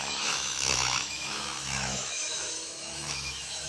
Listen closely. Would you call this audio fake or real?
fake